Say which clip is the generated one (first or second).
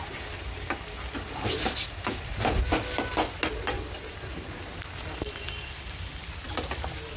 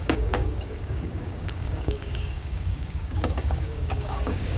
second